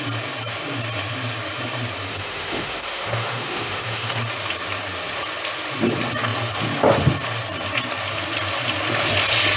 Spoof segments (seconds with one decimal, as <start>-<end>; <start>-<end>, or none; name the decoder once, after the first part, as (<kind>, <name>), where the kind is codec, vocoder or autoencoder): 2.1-4.2 (autoencoder, DAC-VAE)